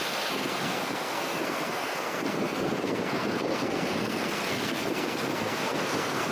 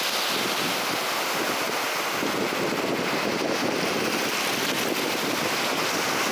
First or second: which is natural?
second